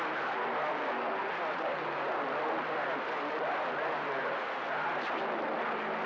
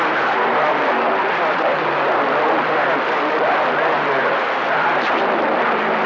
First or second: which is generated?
second